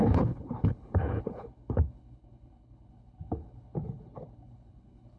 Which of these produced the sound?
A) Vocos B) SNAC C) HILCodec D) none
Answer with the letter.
C